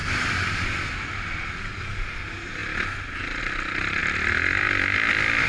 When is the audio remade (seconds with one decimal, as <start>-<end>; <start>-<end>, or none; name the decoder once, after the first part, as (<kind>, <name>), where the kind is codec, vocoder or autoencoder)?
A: none